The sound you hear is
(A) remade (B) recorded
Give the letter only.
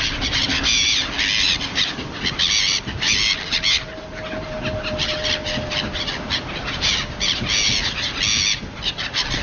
B